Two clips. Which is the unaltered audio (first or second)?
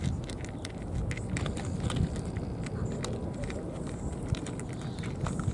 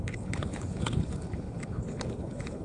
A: first